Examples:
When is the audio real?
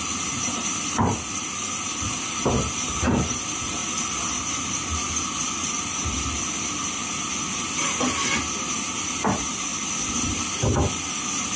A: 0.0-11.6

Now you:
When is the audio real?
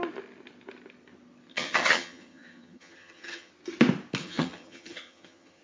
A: 0.0-1.5; 3.5-4.2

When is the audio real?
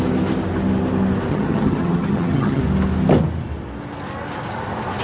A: 0.0-1.3; 2.6-5.0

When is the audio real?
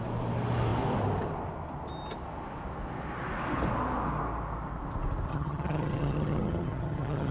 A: 0.0-5.3